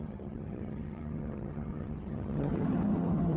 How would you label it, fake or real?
fake